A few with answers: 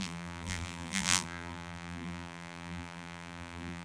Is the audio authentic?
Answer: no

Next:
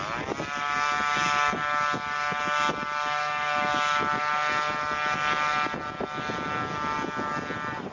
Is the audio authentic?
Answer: yes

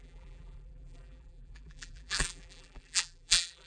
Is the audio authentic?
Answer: no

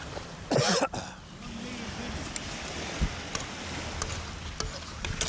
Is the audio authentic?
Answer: yes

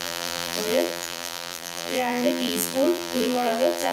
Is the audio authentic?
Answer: no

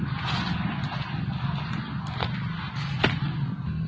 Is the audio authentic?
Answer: yes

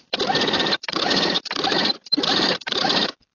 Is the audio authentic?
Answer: no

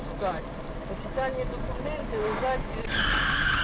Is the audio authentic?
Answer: yes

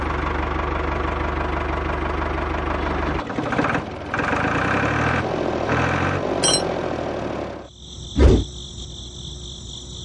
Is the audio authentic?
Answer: yes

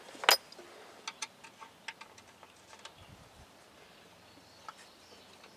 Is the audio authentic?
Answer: yes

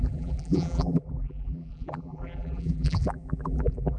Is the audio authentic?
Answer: no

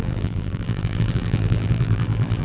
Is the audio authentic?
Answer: no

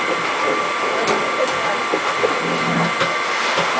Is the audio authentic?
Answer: yes